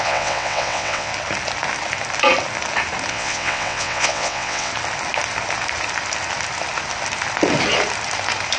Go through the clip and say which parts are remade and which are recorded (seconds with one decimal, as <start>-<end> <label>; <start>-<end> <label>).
0.0-1.1 remade; 1.1-3.1 recorded; 3.1-4.7 remade; 4.7-8.6 recorded